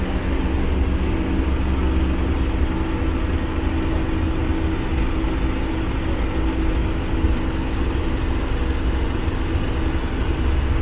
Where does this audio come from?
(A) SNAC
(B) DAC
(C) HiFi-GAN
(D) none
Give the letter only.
D